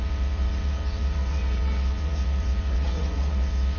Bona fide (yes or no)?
no